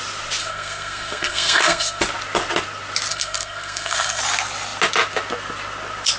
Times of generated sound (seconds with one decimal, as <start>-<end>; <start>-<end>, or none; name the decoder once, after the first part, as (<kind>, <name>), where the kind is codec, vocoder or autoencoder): 0.4-2.0 (codec, SNAC); 3.1-4.2